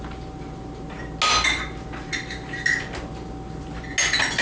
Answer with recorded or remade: recorded